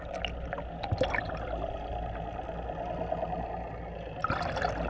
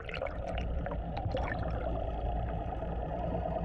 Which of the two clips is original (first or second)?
first